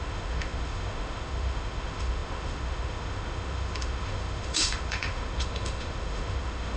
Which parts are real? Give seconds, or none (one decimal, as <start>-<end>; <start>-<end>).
none